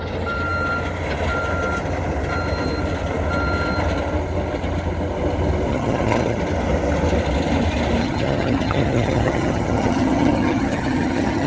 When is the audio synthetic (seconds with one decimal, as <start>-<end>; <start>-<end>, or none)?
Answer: 5.7-6.4; 8.0-11.5